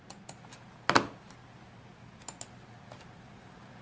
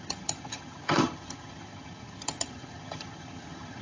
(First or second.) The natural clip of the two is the first